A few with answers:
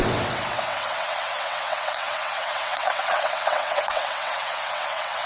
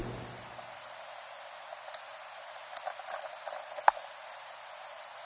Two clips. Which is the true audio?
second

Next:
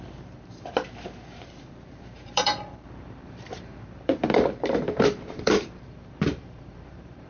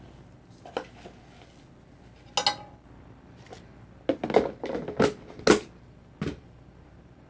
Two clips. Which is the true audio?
second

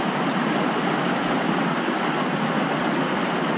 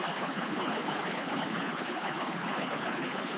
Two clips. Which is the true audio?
first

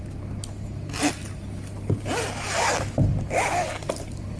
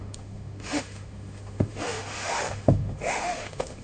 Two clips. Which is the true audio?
first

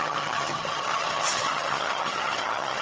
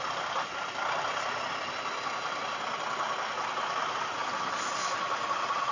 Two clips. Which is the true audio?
second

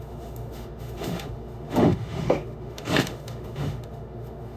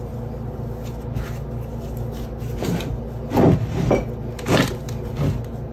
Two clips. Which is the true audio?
second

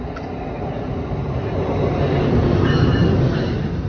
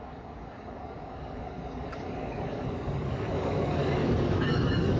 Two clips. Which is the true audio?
first